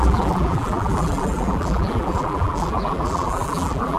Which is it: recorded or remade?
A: remade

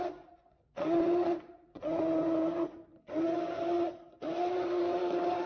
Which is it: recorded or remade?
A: remade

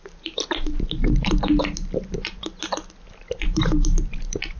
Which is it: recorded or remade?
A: recorded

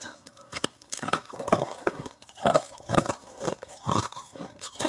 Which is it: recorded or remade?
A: remade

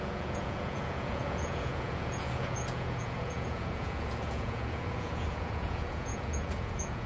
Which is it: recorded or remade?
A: remade